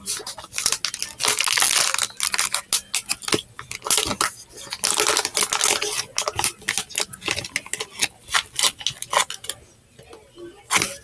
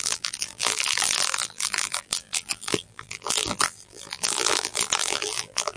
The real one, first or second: first